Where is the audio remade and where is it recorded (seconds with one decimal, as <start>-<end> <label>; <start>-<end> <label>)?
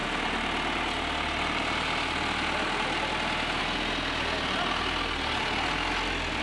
0.0-6.4 recorded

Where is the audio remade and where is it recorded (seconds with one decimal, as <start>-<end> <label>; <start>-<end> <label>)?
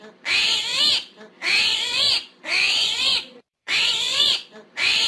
0.0-1.7 recorded; 1.7-5.1 remade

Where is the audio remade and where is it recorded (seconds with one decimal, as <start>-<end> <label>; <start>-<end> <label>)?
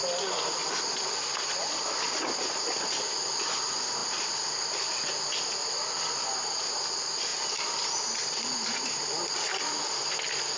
0.0-10.6 recorded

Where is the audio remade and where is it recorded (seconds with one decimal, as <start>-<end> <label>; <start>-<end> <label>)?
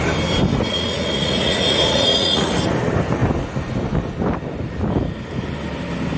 0.0-0.5 recorded; 0.5-2.6 remade; 2.6-6.2 recorded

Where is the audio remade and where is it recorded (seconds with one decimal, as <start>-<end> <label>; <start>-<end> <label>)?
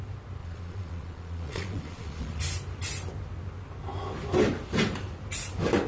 0.0-0.4 recorded; 0.4-2.4 remade; 2.4-5.9 recorded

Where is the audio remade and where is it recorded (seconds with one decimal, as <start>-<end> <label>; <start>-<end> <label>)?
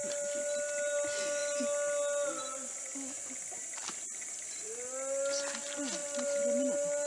0.0-7.1 recorded